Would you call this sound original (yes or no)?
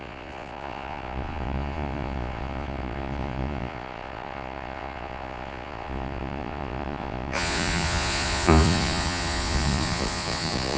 no